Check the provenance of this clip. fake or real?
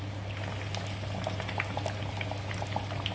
real